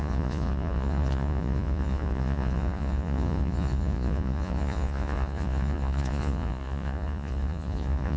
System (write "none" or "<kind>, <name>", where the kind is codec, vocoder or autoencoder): vocoder, Vocos